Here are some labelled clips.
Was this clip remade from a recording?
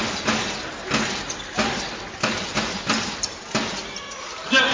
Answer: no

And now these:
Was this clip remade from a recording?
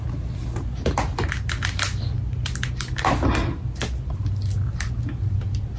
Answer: no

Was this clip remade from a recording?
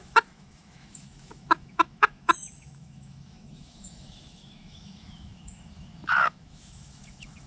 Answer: yes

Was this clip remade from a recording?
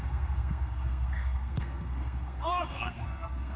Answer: yes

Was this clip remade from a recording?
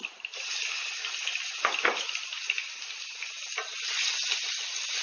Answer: no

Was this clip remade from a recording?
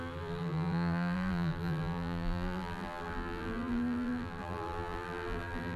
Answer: yes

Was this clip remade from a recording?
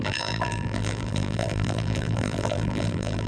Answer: yes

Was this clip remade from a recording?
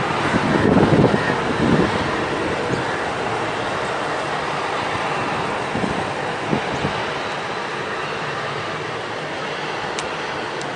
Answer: no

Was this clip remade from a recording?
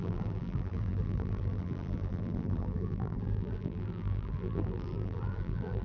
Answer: yes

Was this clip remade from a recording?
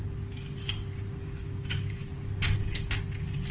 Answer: no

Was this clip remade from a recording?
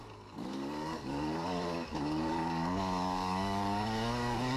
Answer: yes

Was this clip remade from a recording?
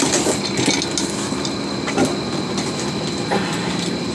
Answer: no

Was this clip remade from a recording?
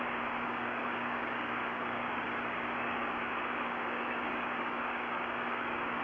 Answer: yes